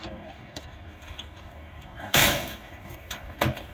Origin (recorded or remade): remade